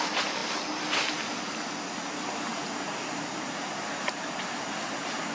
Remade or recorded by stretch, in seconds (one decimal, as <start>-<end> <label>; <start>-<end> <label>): 0.0-5.3 recorded

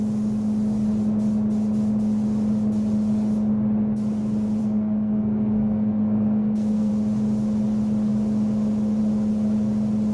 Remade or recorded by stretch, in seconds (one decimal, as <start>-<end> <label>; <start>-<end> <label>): 0.0-4.6 recorded; 4.6-6.9 remade; 6.9-10.1 recorded

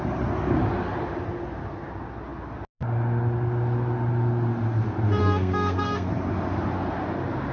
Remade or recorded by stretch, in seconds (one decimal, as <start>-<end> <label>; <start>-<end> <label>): 0.0-5.2 recorded; 5.2-6.1 remade; 6.1-7.5 recorded

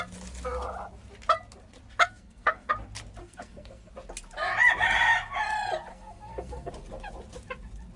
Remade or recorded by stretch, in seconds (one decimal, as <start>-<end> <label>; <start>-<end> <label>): 0.0-2.0 recorded; 2.0-2.7 remade; 2.7-3.2 recorded; 3.2-3.9 remade; 3.9-5.9 recorded; 5.9-6.7 remade; 6.7-8.0 recorded